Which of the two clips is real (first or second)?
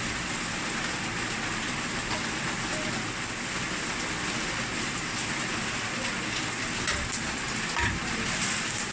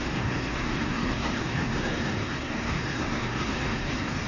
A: first